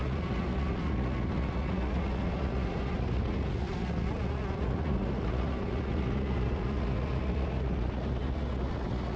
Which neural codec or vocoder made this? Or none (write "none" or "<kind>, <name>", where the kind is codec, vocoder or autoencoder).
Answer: vocoder, Vocos